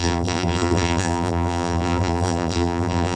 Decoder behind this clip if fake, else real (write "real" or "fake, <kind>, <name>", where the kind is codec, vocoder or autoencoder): fake, vocoder, BigVGAN v2